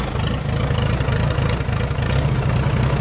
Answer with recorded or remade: recorded